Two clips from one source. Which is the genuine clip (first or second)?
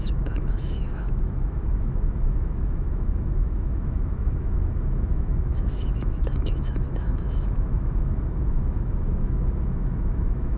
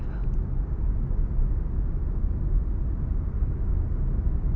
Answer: second